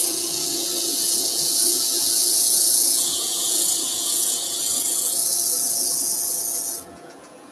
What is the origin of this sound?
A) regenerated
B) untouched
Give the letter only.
A